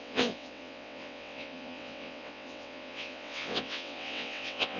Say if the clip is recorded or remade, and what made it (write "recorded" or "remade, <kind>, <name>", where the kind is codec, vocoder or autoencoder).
remade, vocoder, WaveNeXt